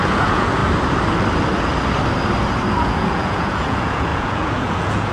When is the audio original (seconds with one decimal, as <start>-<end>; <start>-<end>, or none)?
0.6-2.8